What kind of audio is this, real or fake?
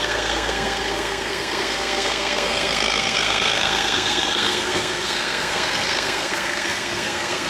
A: fake